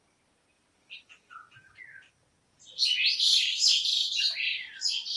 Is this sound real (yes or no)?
yes